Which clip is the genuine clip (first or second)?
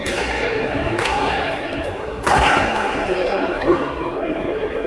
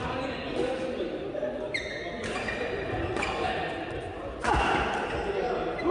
second